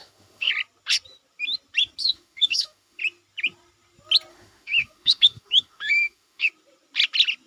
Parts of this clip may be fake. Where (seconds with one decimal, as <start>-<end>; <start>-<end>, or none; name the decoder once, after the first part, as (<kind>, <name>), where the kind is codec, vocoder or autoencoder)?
0.0-0.5 (autoencoder, DAC-VAE); 2.0-3.0; 4.3-6.5